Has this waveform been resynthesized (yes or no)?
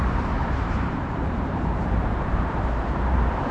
yes